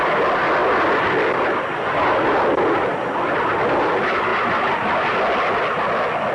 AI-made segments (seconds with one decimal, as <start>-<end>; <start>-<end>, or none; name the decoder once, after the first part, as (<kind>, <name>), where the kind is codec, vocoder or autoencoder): none